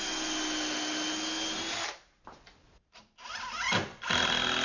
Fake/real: real